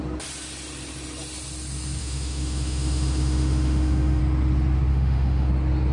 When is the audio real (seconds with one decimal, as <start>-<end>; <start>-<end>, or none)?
0.0-2.0; 4.2-4.9; 5.5-5.9